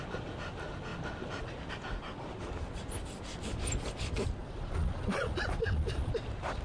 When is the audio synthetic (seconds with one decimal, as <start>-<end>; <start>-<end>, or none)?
4.4-6.1